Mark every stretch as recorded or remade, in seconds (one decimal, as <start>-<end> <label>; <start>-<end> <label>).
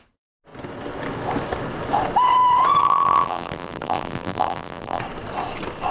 0.0-2.8 recorded; 2.8-5.0 remade; 5.0-5.9 recorded